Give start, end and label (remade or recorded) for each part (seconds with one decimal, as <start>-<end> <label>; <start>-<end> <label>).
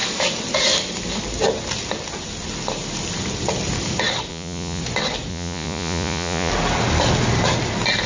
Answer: 0.0-4.3 recorded; 4.3-4.8 remade; 4.8-5.3 recorded; 5.3-6.5 remade; 6.5-8.1 recorded